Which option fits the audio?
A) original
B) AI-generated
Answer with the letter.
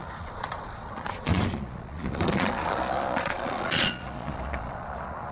B